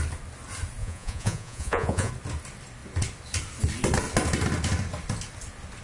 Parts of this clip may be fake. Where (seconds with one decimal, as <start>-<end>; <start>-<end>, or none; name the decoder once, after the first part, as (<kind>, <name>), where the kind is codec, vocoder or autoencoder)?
0.8-2.1 (vocoder, Vocos)